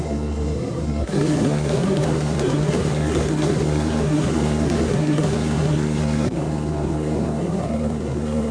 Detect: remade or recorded remade